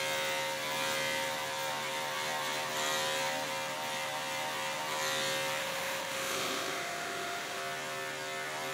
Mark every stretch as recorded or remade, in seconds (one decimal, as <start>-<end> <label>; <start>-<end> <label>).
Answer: 0.0-5.6 recorded; 5.6-7.6 remade; 7.6-8.7 recorded

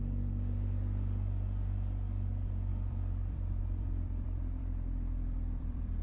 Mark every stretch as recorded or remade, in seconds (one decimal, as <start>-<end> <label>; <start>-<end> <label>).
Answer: 0.0-2.7 recorded; 2.7-6.0 remade

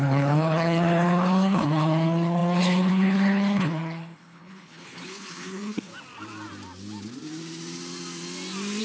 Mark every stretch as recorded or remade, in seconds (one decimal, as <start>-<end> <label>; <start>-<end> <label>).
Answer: 0.0-5.9 remade; 5.9-8.8 recorded

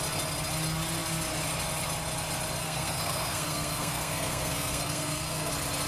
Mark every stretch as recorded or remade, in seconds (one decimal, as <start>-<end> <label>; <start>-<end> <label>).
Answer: 0.0-2.6 recorded; 2.6-5.5 remade; 5.5-5.9 recorded

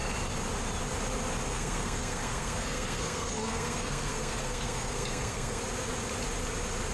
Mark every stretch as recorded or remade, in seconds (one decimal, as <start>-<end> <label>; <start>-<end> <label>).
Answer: 0.0-1.5 recorded; 1.5-5.6 remade; 5.6-6.9 recorded

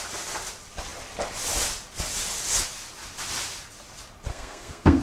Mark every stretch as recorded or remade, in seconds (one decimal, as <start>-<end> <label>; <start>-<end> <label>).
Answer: 0.0-4.3 recorded; 4.3-5.0 remade

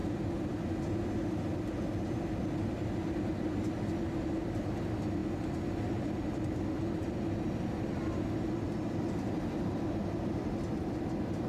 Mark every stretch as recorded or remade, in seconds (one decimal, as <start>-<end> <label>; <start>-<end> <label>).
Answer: 0.0-11.5 recorded